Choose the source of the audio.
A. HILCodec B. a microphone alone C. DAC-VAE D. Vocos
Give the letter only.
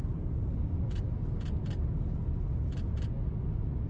B